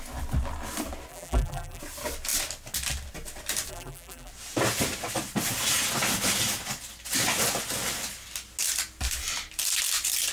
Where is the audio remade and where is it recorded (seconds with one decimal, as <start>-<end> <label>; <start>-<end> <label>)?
0.0-1.1 recorded; 1.1-1.8 remade; 1.8-3.7 recorded; 3.7-4.3 remade; 4.3-10.3 recorded